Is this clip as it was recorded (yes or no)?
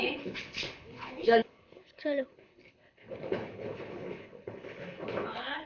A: no